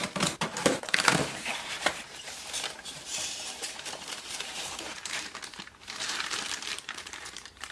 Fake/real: fake